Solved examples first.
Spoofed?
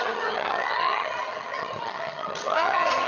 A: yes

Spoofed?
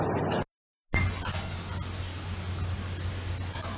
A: no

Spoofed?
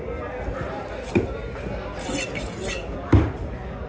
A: no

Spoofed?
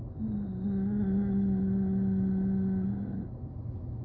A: no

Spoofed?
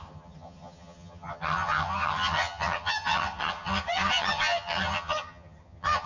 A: yes